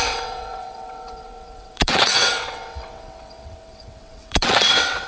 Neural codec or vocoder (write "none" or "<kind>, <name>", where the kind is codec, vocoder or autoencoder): vocoder, WaveNeXt